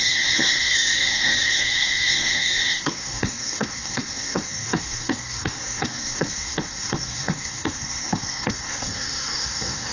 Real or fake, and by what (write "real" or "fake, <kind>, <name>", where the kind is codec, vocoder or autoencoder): fake, codec, SNAC